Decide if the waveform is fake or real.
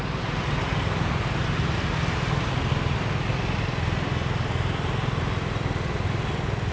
real